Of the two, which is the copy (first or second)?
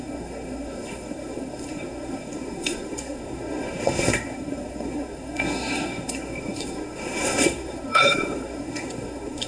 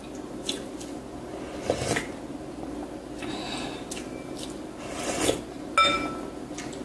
first